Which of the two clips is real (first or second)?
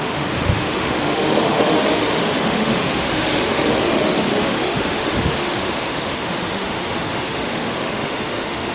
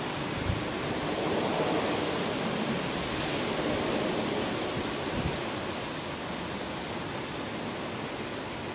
second